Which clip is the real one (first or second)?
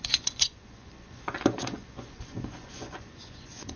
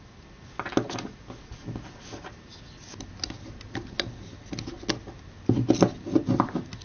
second